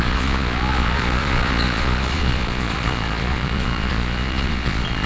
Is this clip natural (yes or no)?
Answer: no